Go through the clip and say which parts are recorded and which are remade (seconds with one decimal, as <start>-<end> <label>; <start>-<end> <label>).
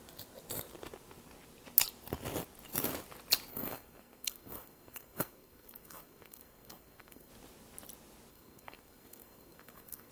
0.0-3.5 recorded; 3.5-7.3 remade; 7.3-8.3 recorded; 8.3-10.1 remade